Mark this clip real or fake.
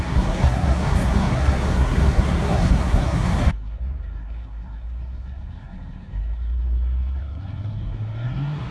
fake